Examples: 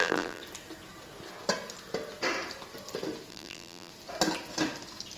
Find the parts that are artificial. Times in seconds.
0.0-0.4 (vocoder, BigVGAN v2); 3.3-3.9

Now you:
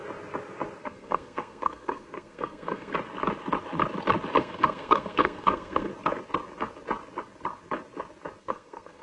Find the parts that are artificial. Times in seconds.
0.8-2.9 (codec, SNAC); 4.4-5.9; 8.4-9.0